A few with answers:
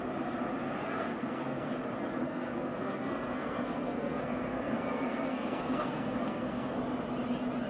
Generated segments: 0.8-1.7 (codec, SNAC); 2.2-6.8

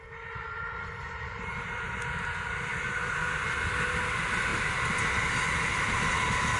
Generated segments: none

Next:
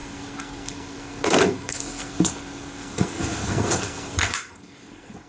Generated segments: 0.0-5.3 (codec, SNAC)

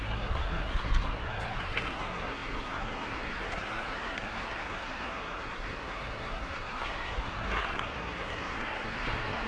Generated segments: 0.0-9.5 (codec, SNAC)

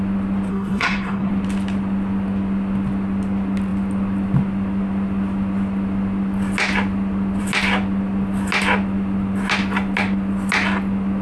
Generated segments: 0.5-1.3 (codec, SNAC)

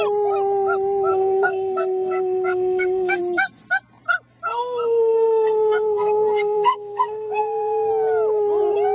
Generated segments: 1.1-3.2 (codec, SNAC); 4.5-7.9